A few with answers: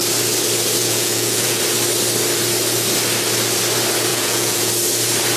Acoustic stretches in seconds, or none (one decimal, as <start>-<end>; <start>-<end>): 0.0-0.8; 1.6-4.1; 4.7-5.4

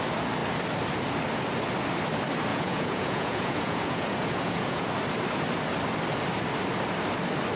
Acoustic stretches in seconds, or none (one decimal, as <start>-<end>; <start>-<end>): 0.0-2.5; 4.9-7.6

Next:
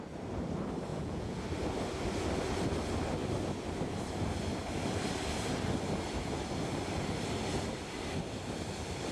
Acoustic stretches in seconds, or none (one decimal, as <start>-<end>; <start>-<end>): 0.0-0.9; 1.4-9.1

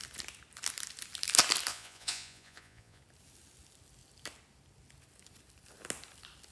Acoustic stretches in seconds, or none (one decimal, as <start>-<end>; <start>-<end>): 0.0-1.7; 3.0-6.5

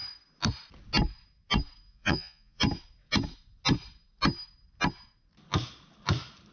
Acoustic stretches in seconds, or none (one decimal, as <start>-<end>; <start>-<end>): 0.0-1.9; 2.6-6.5